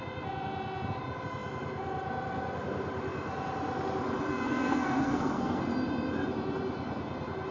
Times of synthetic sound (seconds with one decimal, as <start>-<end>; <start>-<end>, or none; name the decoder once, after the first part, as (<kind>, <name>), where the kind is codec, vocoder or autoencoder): 4.3-5.6 (codec, SNAC)